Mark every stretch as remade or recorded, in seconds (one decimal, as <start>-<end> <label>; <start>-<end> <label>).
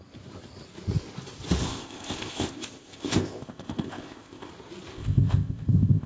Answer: 0.0-1.6 recorded; 1.6-4.5 remade; 4.5-4.9 recorded; 4.9-6.1 remade